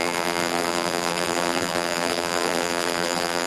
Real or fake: fake